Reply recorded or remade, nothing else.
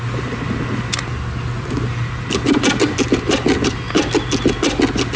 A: recorded